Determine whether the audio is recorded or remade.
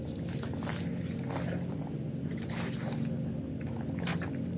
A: recorded